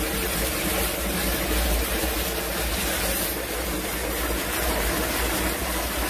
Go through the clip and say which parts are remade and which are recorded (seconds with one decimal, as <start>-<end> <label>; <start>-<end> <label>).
0.0-6.1 recorded